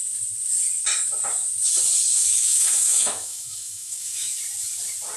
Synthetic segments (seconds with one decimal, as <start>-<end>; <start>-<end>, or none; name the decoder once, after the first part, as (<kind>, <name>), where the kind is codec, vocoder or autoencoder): 2.1-4.4 (autoencoder, DAC-VAE)